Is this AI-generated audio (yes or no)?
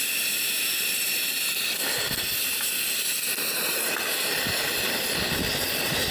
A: no